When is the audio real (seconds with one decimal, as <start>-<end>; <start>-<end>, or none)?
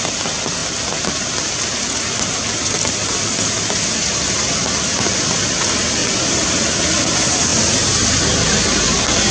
0.0-9.3